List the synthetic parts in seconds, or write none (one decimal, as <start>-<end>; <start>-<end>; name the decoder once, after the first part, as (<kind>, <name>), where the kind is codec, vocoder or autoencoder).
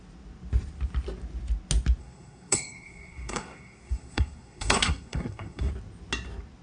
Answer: 2.0-5.7 (codec, SNAC)